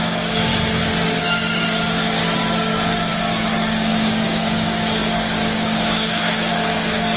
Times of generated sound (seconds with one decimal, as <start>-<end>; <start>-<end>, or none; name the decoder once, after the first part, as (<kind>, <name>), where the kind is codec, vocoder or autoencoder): 0.0-0.5 (codec, DAC); 1.2-2.2; 3.2-7.2